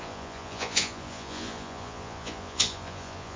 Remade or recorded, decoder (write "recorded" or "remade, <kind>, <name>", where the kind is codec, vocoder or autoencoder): remade, vocoder, Vocos